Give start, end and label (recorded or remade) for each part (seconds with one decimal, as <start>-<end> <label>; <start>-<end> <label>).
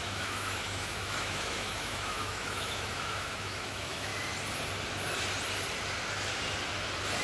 0.0-4.1 remade; 4.1-7.2 recorded